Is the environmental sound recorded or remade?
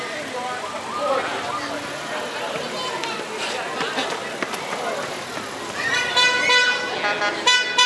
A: recorded